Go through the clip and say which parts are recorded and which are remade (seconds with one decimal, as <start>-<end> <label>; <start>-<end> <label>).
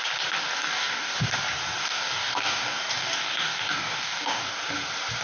0.0-0.7 recorded; 0.7-1.4 remade; 1.4-1.8 recorded; 1.8-4.6 remade; 4.6-5.2 recorded